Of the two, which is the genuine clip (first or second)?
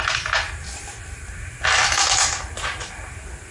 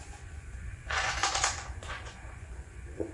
first